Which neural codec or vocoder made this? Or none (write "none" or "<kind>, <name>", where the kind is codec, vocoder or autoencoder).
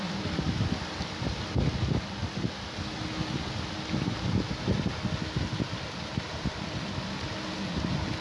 none